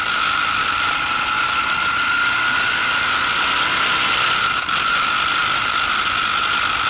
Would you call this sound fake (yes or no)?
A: no